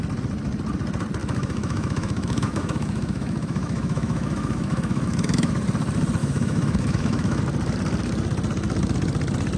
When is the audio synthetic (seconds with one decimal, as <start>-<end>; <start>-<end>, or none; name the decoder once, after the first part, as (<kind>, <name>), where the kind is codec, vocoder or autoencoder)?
1.2-5.5 (autoencoder, DAC-VAE); 6.2-7.4